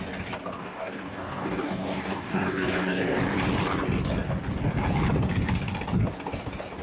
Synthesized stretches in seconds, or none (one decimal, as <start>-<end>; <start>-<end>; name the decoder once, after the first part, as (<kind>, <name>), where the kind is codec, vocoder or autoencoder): 0.6-3.2 (codec, DAC)